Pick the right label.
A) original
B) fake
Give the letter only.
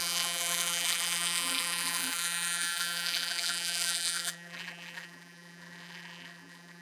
B